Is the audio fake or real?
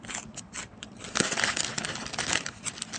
real